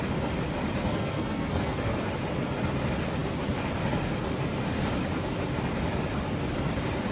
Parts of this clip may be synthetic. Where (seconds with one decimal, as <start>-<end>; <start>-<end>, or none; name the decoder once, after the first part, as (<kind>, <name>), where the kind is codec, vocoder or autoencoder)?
0.8-2.1 (codec, SNAC)